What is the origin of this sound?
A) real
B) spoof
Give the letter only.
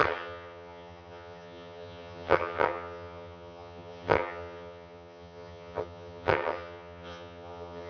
B